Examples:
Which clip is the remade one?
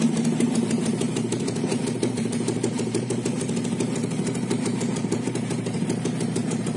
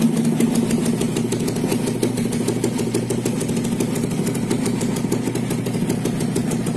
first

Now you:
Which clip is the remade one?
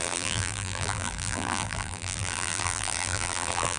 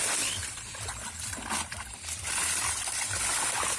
first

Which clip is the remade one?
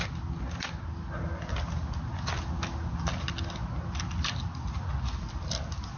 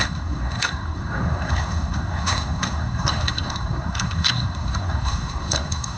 second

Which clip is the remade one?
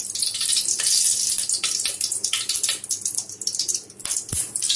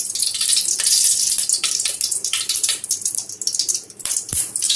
second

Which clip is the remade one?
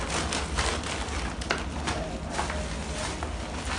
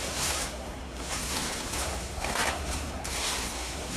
second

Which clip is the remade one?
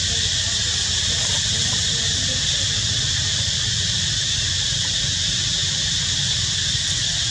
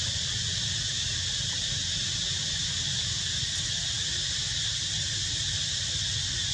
first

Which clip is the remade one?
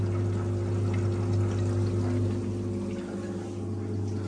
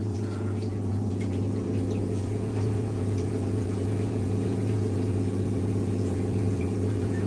second